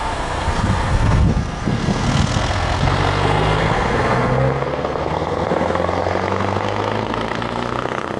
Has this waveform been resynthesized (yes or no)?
yes